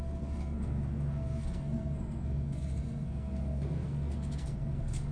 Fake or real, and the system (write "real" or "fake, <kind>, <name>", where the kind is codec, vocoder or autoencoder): fake, codec, SNAC